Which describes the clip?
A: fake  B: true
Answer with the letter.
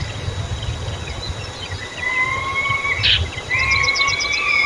B